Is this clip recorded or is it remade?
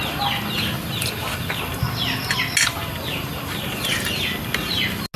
recorded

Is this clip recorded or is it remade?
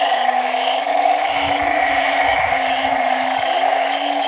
remade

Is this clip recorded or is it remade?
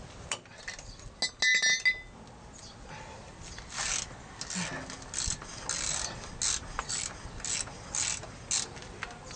recorded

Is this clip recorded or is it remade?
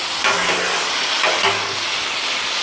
recorded